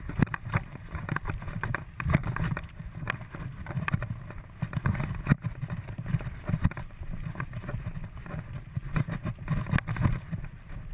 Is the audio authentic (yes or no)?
yes